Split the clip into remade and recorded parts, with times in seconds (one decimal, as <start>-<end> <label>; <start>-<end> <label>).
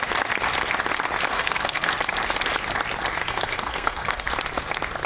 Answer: 0.0-1.3 recorded; 1.3-1.9 remade; 1.9-3.2 recorded; 3.2-4.3 remade; 4.3-5.1 recorded